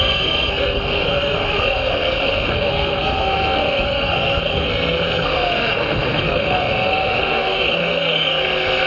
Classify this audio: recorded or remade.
remade